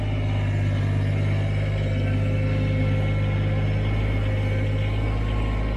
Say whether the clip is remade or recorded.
recorded